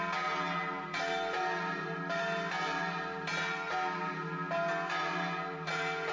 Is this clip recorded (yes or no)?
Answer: yes